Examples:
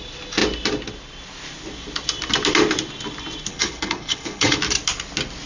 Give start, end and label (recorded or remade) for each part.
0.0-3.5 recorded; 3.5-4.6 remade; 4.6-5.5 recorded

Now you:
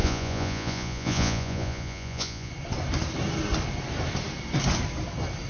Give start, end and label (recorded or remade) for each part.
0.0-2.5 remade; 2.5-5.5 recorded

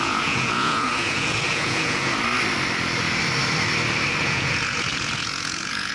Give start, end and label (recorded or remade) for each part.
0.0-2.1 remade; 2.1-4.2 recorded; 4.2-5.9 remade

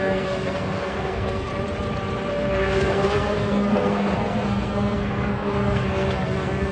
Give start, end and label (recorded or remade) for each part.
0.0-1.5 remade; 1.5-2.3 recorded; 2.3-6.7 remade

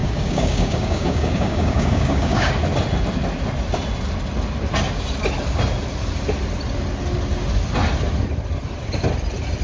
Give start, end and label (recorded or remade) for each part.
0.0-2.5 remade; 2.5-9.6 recorded

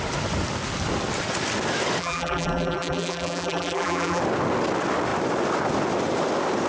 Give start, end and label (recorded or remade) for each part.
0.0-2.0 recorded; 2.0-4.2 remade; 4.2-6.7 recorded

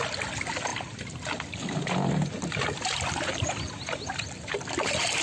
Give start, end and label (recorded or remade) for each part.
0.0-5.2 recorded